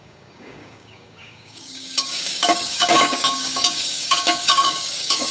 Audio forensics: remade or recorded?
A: remade